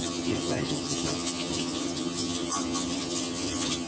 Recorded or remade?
remade